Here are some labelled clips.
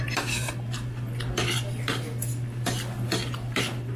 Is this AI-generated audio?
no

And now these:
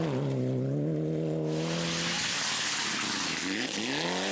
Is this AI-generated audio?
no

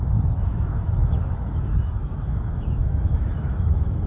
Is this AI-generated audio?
yes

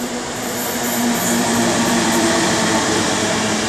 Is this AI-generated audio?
yes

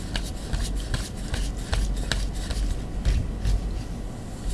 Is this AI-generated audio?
no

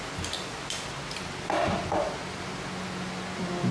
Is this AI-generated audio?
no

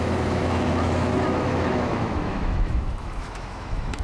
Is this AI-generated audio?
yes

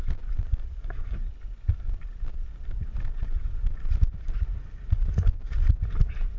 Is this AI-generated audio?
yes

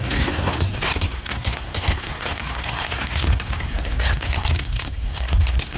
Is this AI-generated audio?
yes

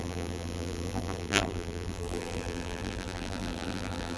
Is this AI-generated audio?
yes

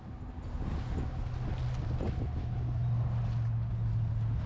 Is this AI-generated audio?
no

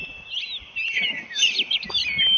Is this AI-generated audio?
no